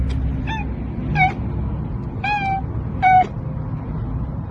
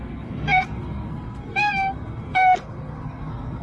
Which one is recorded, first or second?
first